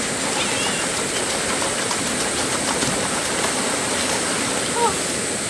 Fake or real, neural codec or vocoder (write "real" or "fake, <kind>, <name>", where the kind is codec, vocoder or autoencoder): real